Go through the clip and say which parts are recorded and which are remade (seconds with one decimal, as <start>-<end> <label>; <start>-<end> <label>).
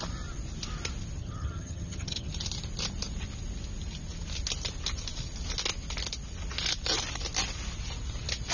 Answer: 0.0-1.2 recorded; 1.2-2.3 remade; 2.3-8.5 recorded